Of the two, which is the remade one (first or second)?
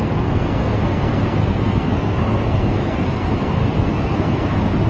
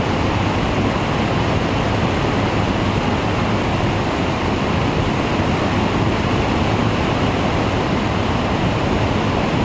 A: first